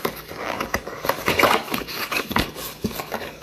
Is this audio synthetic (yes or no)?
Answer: yes